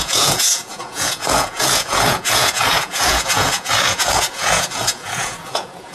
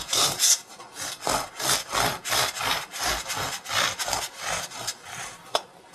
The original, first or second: second